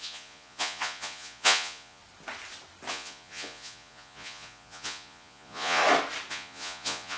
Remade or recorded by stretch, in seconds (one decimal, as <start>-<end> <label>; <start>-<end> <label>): 0.0-2.0 remade; 2.0-2.9 recorded; 2.9-5.8 remade; 5.8-6.3 recorded; 6.3-7.2 remade